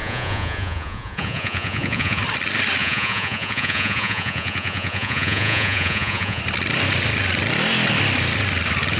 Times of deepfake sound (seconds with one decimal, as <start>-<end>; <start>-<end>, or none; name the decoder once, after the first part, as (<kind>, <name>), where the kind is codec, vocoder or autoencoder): 0.0-2.2 (vocoder, Vocos); 2.8-6.4